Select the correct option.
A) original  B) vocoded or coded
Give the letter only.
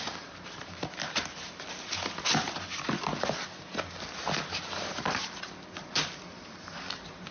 A